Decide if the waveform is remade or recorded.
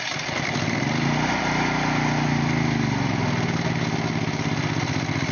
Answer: recorded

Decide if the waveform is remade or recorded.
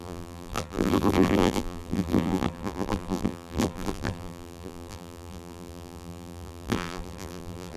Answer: remade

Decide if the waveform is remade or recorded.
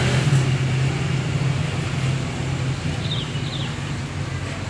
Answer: recorded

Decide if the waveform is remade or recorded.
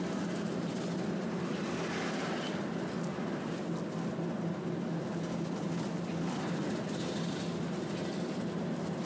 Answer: recorded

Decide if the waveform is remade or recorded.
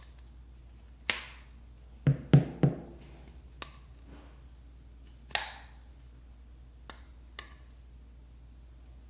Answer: recorded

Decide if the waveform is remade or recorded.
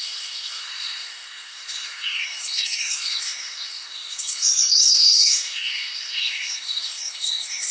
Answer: remade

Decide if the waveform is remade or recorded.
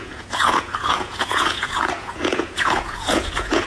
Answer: remade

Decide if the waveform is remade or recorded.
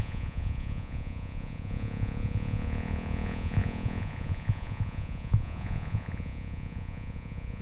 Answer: remade